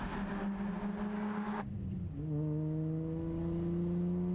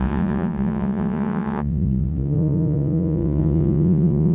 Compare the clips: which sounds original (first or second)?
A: first